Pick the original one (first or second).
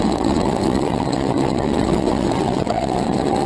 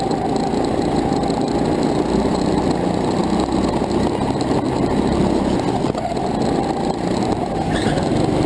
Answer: second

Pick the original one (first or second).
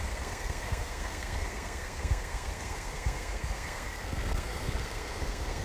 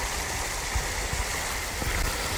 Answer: second